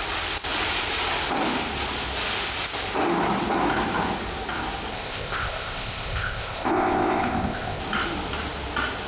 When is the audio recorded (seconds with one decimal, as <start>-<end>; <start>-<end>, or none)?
0.0-4.9; 7.8-9.1